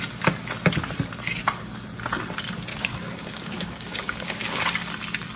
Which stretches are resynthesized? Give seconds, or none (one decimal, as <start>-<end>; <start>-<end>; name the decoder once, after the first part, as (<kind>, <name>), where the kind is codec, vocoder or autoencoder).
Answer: 2.7-4.6 (codec, DAC)